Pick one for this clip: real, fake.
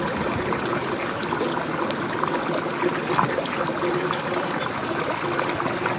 real